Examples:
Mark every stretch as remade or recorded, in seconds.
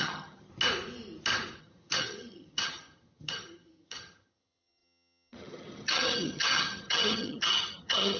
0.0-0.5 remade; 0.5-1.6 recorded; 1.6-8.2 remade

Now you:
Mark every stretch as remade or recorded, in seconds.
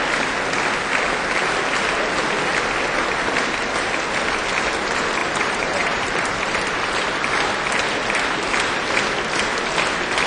0.0-5.2 recorded; 5.2-6.1 remade; 6.1-10.3 recorded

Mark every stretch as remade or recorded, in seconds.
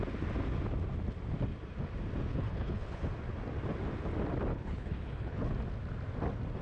0.0-2.3 recorded; 2.3-3.0 remade; 3.0-4.5 recorded; 4.5-5.5 remade; 5.5-6.6 recorded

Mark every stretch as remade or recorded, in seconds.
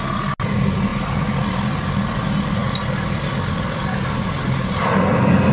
0.0-5.5 recorded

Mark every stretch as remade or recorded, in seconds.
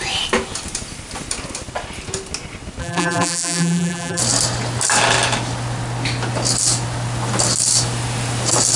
0.0-2.8 recorded; 2.8-4.2 remade; 4.2-8.8 recorded